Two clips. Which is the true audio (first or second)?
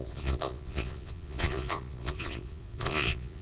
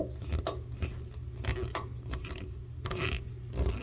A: second